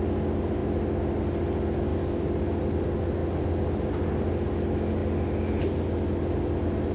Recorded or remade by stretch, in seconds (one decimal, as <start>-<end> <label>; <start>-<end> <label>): 0.0-3.2 recorded; 3.2-4.1 remade; 4.1-6.9 recorded